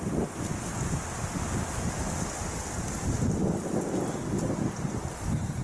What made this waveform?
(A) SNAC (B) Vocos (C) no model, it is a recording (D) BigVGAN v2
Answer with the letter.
C